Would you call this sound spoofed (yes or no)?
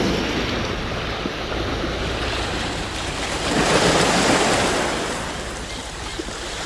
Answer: no